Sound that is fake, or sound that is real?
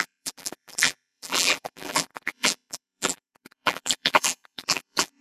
fake